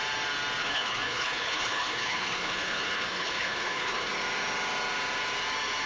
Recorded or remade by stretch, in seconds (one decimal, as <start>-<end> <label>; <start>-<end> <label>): 0.0-0.6 recorded; 0.6-4.1 remade; 4.1-5.9 recorded

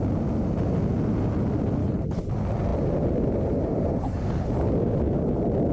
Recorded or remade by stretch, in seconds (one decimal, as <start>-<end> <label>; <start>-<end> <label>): 0.0-1.8 recorded; 1.8-2.3 remade; 2.3-5.7 recorded

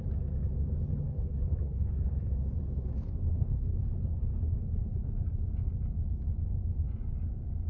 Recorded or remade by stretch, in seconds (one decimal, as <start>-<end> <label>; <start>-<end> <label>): 0.0-0.9 recorded; 0.9-2.3 remade; 2.3-3.3 recorded; 3.3-5.1 remade; 5.1-7.7 recorded

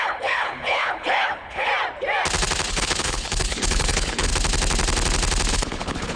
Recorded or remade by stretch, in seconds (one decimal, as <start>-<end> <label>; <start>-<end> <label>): 0.0-1.7 remade; 1.7-2.7 recorded; 2.7-4.3 remade; 4.3-5.5 recorded; 5.5-6.2 remade

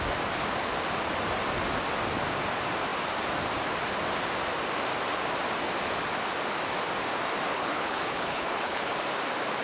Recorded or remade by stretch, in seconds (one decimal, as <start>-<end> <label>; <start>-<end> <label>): 0.0-7.5 recorded; 7.5-8.9 remade; 8.9-9.6 recorded

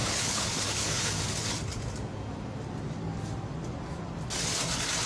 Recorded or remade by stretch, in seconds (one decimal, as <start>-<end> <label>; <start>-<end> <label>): 0.0-1.2 remade; 1.2-5.1 recorded